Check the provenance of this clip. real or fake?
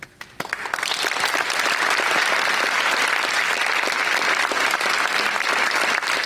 real